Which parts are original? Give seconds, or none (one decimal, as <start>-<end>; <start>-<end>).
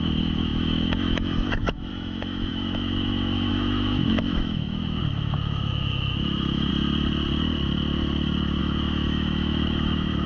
6.7-8.6